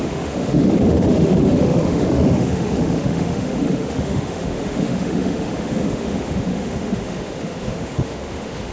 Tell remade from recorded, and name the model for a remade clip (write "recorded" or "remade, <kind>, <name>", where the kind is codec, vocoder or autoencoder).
remade, autoencoder, DAC-VAE